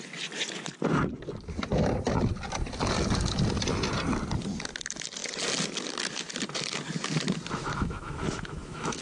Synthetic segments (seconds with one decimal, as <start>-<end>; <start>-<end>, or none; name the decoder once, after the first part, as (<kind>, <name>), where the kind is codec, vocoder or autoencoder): 7.6-9.0 (autoencoder, DAC-VAE)